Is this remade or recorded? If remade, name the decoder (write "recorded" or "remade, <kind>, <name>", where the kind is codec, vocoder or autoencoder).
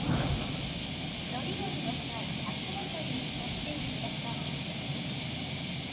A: recorded